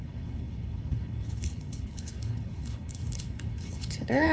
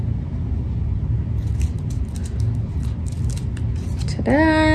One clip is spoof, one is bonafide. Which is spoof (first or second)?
first